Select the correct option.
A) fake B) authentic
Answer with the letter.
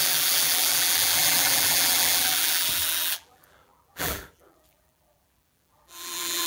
A